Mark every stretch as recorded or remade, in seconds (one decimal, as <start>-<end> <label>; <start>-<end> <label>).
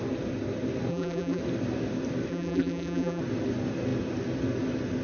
0.0-0.9 recorded; 0.9-1.4 remade; 1.4-2.3 recorded; 2.3-3.2 remade; 3.2-5.0 recorded